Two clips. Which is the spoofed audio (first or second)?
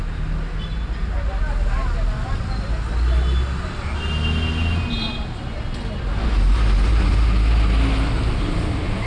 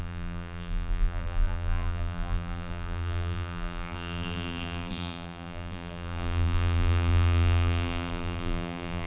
second